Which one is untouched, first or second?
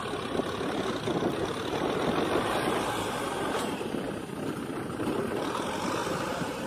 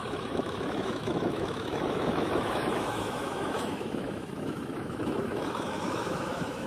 first